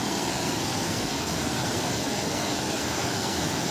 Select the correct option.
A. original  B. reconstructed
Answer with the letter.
B